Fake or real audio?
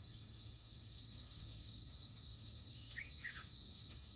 fake